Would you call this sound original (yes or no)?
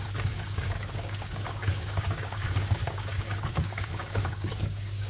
no